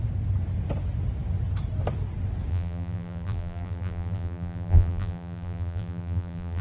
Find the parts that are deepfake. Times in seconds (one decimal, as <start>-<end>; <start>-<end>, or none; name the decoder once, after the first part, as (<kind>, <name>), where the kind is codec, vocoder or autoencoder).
2.5-6.6 (vocoder, BigVGAN v2)

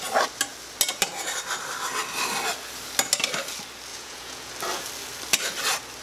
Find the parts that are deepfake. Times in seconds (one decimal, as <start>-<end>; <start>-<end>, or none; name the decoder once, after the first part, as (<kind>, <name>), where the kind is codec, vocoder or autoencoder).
3.9-4.5 (vocoder, Vocos)

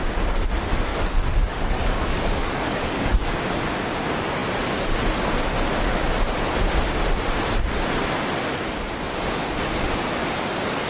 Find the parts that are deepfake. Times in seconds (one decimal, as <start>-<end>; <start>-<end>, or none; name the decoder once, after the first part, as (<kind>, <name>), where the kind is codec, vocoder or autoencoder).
0.9-3.3 (codec, DAC)

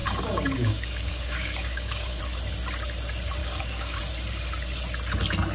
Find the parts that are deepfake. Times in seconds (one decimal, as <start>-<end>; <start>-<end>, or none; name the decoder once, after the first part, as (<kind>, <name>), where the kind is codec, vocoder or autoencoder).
0.0-2.2 (codec, DAC); 3.4-4.0

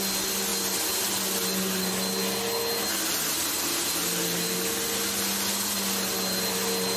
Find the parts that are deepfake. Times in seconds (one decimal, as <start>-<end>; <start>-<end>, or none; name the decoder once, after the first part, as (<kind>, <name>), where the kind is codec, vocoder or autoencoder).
none